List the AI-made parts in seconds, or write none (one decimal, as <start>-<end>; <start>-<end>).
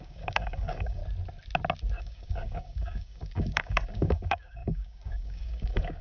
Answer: 0.0-1.0; 2.0-6.0